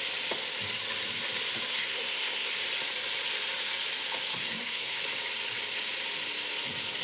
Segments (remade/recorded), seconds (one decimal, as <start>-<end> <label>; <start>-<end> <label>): 0.0-1.7 recorded; 1.7-2.5 remade; 2.5-4.3 recorded; 4.3-5.0 remade; 5.0-7.0 recorded